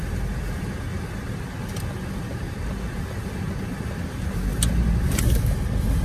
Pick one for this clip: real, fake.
real